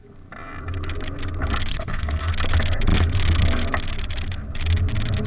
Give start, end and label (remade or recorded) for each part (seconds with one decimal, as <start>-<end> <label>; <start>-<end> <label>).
0.0-1.7 recorded; 1.7-2.3 remade; 2.3-5.3 recorded